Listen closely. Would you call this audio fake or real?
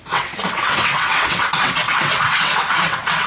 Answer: fake